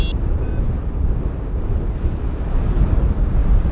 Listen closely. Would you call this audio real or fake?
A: real